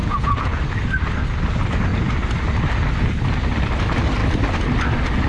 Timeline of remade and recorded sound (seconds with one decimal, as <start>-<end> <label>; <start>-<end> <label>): 0.0-0.6 remade; 0.6-5.3 recorded